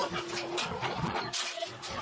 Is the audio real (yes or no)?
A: no